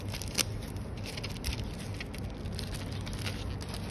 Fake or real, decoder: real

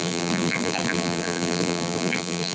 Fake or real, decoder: fake, vocoder, BigVGAN v2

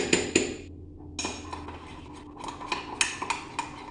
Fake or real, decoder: real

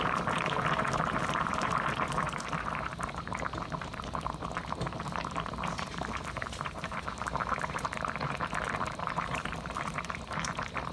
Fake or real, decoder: fake, vocoder, BigVGAN v2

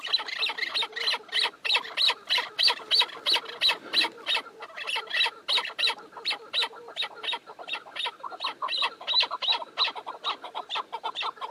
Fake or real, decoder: fake, vocoder, BigVGAN v2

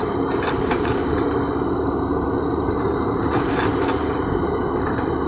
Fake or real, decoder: fake, vocoder, BigVGAN v2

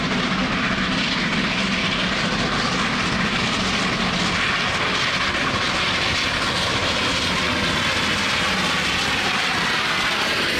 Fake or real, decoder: real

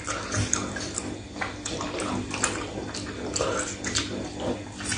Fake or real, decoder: real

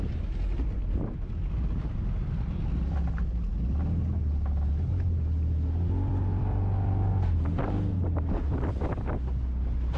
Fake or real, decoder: real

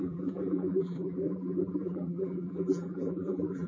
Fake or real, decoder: fake, vocoder, BigVGAN v2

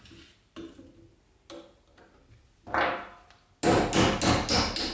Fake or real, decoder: real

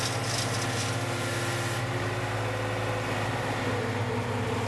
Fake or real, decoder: real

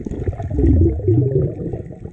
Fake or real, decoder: real